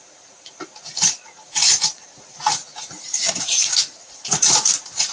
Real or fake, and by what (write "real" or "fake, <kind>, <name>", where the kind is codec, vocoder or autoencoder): fake, vocoder, Vocos